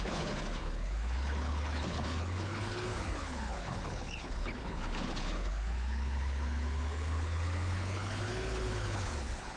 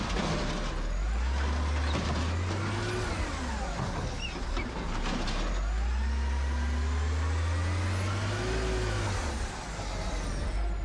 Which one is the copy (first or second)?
first